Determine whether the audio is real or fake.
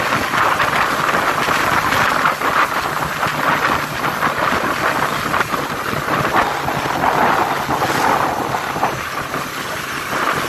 real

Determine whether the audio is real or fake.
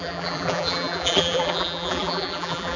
fake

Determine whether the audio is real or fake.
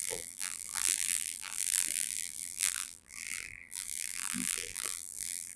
fake